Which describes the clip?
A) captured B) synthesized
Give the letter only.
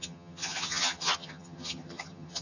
B